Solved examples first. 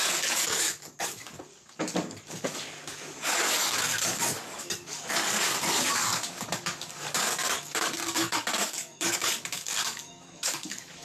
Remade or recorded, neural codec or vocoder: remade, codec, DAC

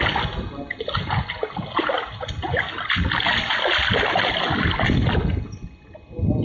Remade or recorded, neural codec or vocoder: recorded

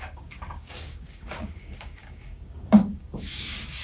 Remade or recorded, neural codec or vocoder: remade, codec, DAC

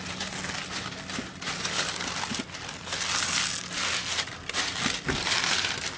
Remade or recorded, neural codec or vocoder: recorded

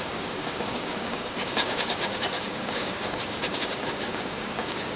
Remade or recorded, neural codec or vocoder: remade, codec, DAC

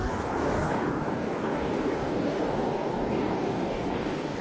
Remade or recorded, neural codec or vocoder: remade, codec, DAC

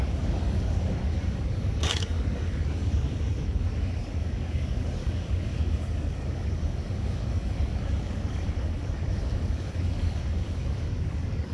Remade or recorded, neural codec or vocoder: remade, codec, DAC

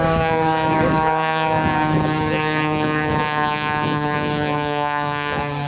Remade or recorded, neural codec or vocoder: remade, codec, DAC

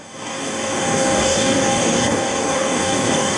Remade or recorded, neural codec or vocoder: remade, codec, DAC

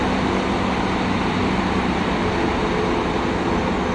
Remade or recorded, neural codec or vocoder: recorded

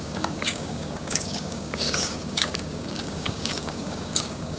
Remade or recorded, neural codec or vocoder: remade, codec, DAC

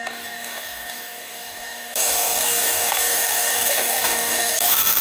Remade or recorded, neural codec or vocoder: remade, codec, DAC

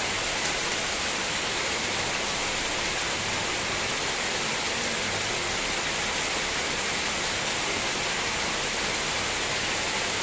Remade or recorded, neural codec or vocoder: recorded